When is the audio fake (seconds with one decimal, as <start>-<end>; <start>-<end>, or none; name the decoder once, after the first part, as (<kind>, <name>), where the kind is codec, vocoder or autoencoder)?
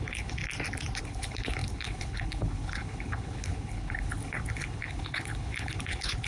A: 0.0-0.4 (codec, HILCodec); 1.0-6.3